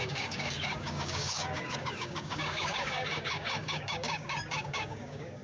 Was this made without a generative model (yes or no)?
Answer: no